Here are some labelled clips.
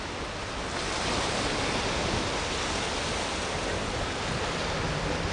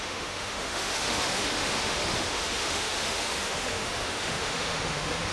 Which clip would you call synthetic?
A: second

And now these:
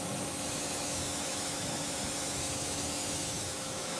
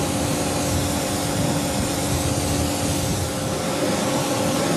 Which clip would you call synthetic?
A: first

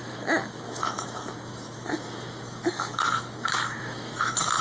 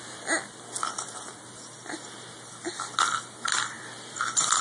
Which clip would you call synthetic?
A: first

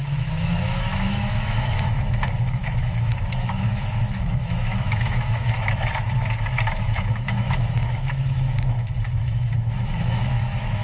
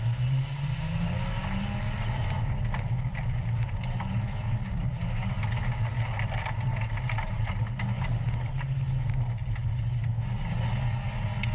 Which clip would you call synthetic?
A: first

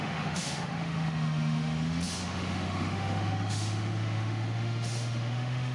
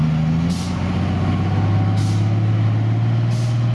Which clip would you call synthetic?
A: first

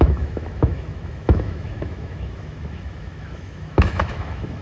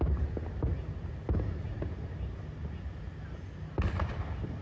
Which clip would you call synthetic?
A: first